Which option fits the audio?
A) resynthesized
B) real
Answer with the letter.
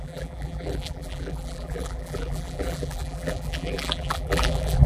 A